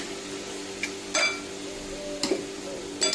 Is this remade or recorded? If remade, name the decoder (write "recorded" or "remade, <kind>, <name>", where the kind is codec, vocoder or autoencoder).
recorded